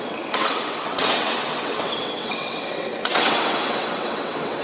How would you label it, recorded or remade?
remade